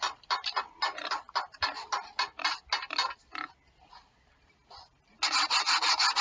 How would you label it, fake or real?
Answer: real